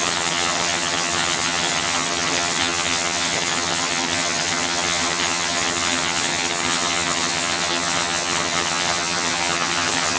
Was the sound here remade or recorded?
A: remade